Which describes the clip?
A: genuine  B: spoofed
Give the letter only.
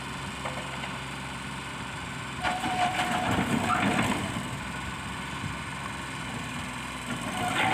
B